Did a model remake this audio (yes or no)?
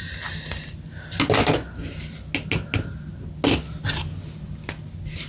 no